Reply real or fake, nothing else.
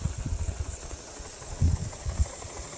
fake